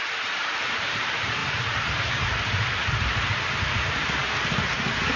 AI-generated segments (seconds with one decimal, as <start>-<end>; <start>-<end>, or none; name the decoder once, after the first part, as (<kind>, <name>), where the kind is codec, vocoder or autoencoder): 0.0-2.8 (vocoder, BigVGAN v2); 3.4-4.2; 4.8-5.2